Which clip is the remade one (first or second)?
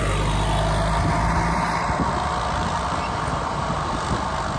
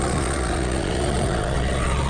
second